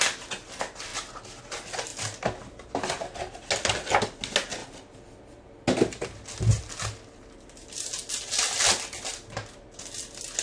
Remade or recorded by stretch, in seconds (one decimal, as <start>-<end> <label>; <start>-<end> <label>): 0.0-10.4 recorded